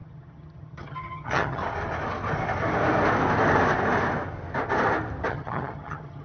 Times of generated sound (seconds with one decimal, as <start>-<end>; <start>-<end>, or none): 0.0-1.6; 5.3-6.2